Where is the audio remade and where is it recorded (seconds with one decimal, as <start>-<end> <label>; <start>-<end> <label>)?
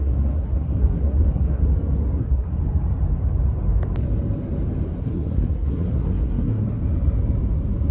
0.0-1.6 remade; 1.6-2.2 recorded; 2.2-2.6 remade; 2.6-5.0 recorded; 5.0-6.8 remade; 6.8-7.9 recorded